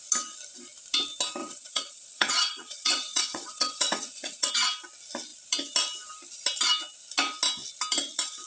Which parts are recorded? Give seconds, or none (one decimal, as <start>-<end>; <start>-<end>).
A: 0.0-1.4; 4.5-8.5